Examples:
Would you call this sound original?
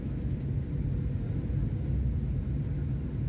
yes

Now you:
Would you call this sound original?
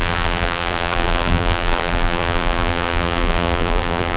no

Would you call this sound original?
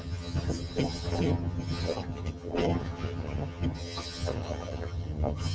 no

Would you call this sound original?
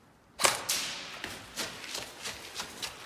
yes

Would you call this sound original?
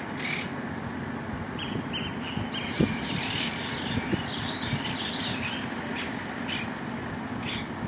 yes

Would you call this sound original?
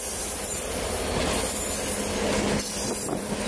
yes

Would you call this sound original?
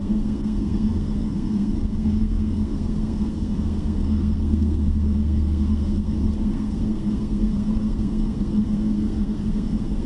no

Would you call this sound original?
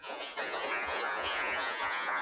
no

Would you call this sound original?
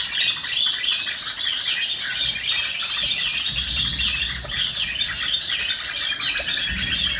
yes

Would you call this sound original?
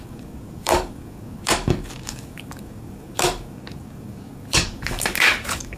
no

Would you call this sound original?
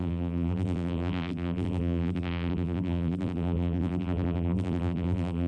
no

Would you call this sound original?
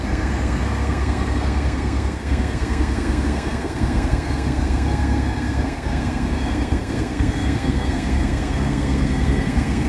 no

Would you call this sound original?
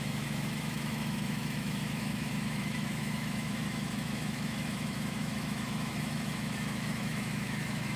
no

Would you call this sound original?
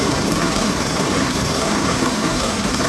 no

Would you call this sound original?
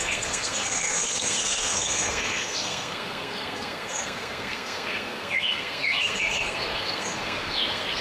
no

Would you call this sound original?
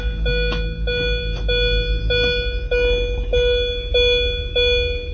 yes